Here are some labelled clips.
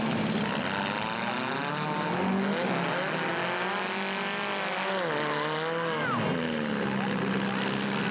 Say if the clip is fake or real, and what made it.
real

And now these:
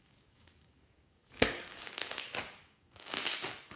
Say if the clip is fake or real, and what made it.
fake, codec, DAC